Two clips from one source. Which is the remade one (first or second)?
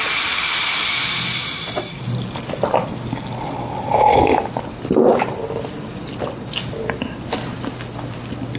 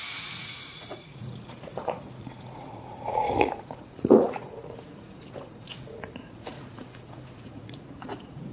second